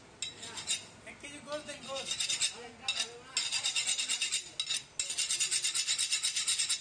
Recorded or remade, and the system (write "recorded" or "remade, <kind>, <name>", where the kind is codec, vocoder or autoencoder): recorded